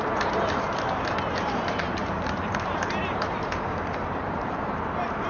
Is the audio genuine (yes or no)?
no